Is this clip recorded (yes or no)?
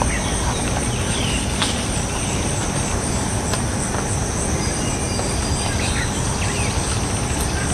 yes